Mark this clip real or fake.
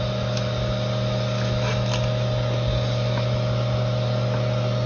real